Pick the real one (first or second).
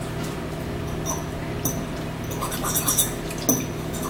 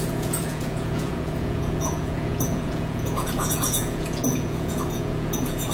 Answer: first